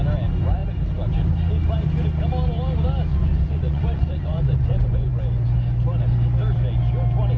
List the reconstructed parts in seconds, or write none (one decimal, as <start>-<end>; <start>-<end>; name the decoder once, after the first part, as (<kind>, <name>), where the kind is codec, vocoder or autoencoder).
3.1-5.2 (vocoder, Vocos)